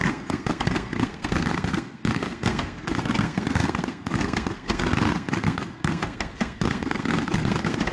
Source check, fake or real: fake